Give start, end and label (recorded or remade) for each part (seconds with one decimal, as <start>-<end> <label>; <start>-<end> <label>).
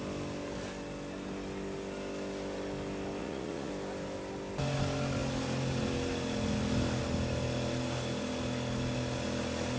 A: 0.0-3.2 recorded; 3.2-3.7 remade; 3.7-9.8 recorded